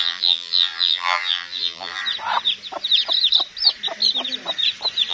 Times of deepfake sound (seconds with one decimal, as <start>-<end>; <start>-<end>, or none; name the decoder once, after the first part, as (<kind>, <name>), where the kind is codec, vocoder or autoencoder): 0.0-2.0 (vocoder, BigVGAN v2)